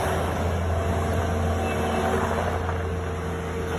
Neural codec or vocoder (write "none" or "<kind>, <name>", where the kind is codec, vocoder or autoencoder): none